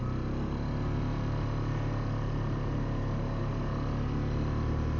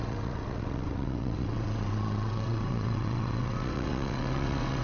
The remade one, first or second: second